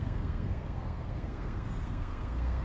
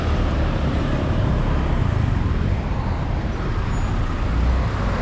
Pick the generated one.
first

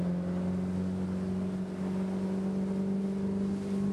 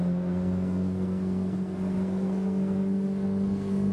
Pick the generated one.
second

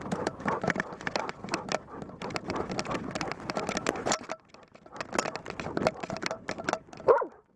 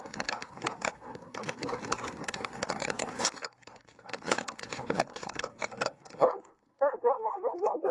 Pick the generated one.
second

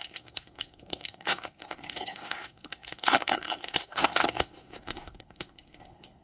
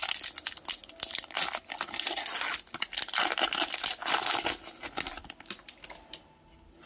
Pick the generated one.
first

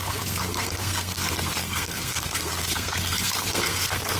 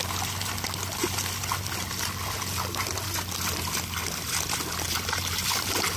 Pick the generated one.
first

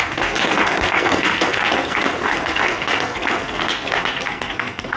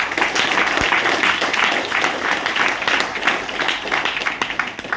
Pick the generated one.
first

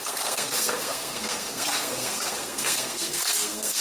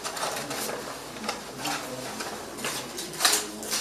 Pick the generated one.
first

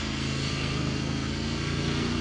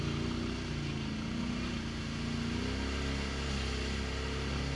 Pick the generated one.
first